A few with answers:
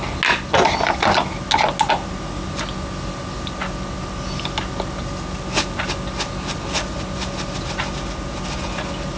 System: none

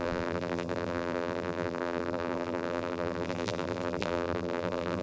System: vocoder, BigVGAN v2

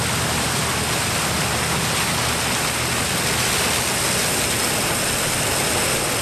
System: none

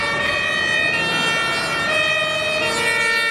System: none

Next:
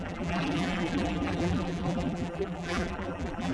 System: vocoder, BigVGAN v2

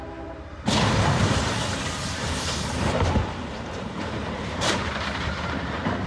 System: vocoder, BigVGAN v2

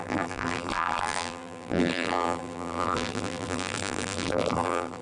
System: vocoder, BigVGAN v2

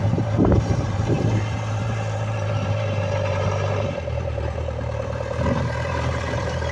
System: vocoder, BigVGAN v2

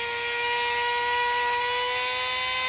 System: none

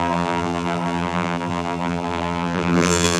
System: vocoder, BigVGAN v2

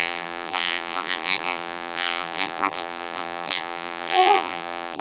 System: vocoder, BigVGAN v2